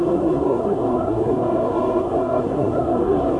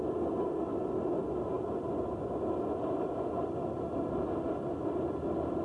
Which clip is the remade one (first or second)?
first